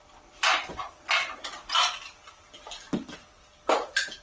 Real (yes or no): yes